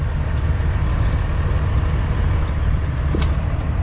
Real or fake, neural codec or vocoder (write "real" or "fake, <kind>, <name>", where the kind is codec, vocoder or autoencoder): real